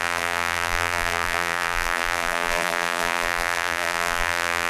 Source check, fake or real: fake